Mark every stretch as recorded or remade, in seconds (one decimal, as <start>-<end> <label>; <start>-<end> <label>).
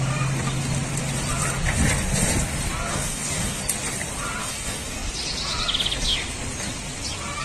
0.0-2.9 recorded; 2.9-3.6 remade; 3.6-4.4 recorded; 4.4-5.1 remade; 5.1-7.4 recorded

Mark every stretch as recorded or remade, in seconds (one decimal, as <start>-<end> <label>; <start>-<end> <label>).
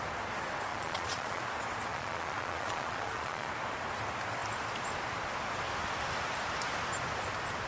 0.0-0.7 recorded; 0.7-1.4 remade; 1.4-1.9 recorded; 1.9-3.5 remade; 3.5-7.7 recorded